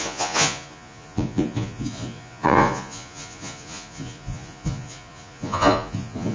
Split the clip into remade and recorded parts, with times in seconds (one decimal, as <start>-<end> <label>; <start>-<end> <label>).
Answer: 0.0-6.3 remade